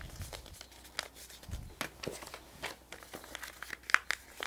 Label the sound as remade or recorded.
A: recorded